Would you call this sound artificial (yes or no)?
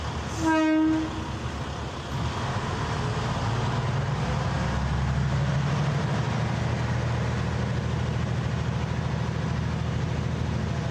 no